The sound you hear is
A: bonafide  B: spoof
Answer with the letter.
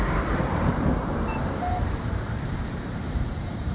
B